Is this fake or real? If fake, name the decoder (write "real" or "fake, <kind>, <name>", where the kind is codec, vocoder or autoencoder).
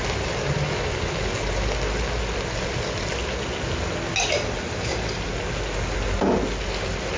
real